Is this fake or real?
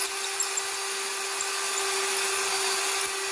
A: real